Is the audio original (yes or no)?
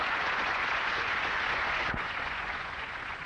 no